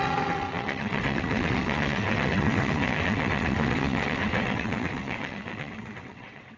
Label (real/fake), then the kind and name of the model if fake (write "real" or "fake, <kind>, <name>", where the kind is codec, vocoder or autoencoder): fake, vocoder, WaveNeXt